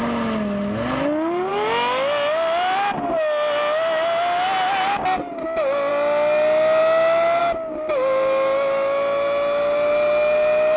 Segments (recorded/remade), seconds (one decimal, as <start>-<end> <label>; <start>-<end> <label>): 0.0-10.8 recorded

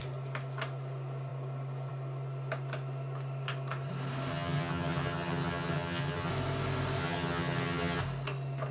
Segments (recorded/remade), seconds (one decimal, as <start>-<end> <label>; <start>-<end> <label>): 0.0-4.3 recorded; 4.3-6.3 remade; 6.3-7.0 recorded; 7.0-8.0 remade; 8.0-8.7 recorded

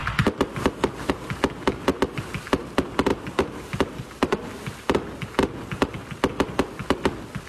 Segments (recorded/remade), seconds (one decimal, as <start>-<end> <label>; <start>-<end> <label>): 0.0-3.1 recorded; 3.1-4.4 remade; 4.4-5.9 recorded; 5.9-7.1 remade; 7.1-7.5 recorded

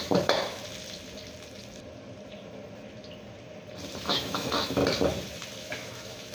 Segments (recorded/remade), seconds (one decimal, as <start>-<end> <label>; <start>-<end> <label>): 0.0-0.6 remade; 0.6-4.0 recorded; 4.0-4.8 remade; 4.8-5.6 recorded; 5.6-6.3 remade

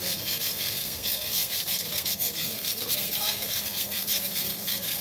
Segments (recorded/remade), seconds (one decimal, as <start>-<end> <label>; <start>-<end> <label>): 0.0-5.0 remade

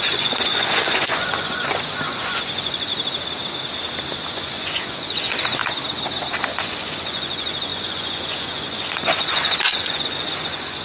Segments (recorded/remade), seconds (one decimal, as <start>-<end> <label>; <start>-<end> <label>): 0.0-2.9 remade; 2.9-4.3 recorded; 4.3-5.6 remade; 5.6-6.5 recorded; 6.5-10.8 remade